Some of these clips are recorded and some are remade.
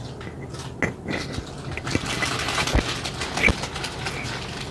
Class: recorded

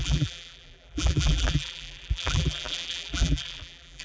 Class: remade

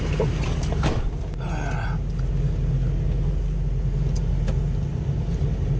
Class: recorded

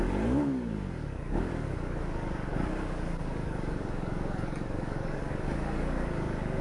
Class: remade